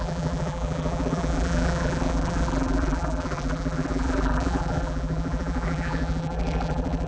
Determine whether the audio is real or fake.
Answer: fake